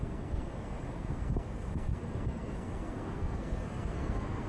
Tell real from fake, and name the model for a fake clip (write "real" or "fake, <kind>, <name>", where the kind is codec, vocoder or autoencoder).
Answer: fake, codec, SNAC